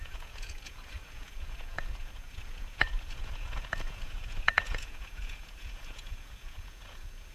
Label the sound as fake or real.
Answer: fake